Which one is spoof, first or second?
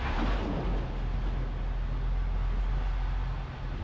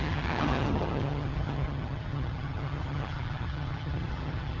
second